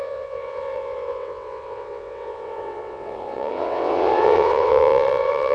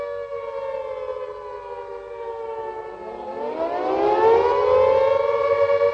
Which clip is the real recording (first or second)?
second